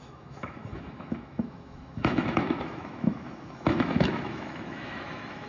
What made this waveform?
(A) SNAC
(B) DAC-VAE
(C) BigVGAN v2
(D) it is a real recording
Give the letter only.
B